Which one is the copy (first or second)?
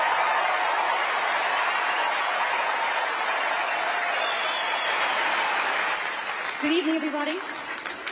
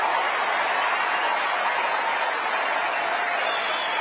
first